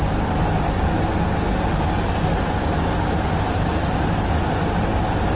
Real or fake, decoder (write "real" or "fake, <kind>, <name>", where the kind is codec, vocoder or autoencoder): real